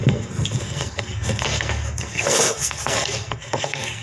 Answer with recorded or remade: remade